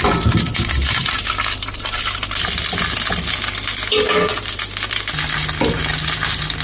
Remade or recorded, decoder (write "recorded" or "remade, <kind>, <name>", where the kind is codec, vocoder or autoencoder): recorded